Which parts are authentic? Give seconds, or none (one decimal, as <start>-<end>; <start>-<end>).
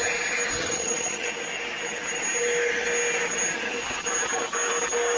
0.0-0.6; 1.3-5.2